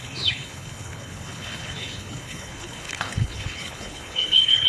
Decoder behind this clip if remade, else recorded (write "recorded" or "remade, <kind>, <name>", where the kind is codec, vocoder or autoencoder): remade, codec, HILCodec